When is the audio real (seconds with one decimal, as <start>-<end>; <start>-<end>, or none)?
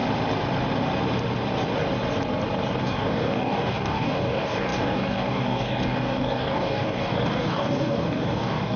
0.0-2.8